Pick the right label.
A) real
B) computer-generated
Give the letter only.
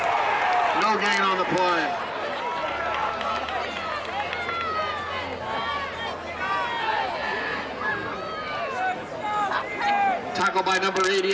A